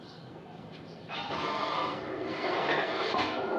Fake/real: fake